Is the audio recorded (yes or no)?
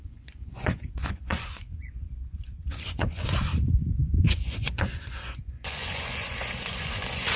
no